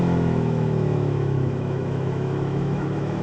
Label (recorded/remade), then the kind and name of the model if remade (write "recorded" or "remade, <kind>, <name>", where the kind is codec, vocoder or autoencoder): remade, autoencoder, DAC-VAE